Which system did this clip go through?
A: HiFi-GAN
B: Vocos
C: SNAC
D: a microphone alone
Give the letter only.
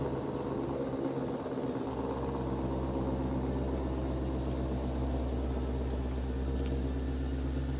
D